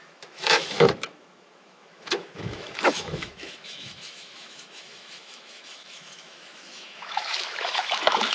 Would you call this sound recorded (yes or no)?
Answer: no